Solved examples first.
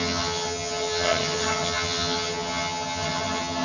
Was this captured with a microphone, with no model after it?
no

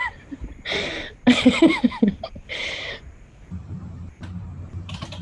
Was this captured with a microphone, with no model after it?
no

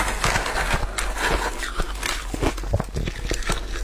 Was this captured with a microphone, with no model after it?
yes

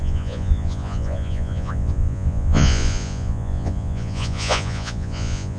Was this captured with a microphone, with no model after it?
no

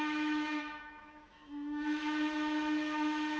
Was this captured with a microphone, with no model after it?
no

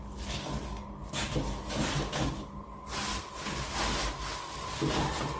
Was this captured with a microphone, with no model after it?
yes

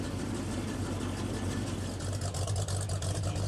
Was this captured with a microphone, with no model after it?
yes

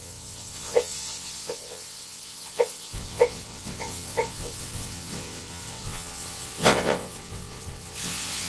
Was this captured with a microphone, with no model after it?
no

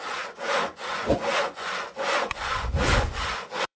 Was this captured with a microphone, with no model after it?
no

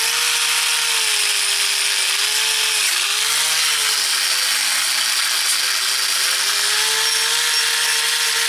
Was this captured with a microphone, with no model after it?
yes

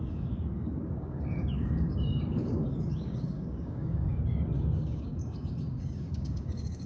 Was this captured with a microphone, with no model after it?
no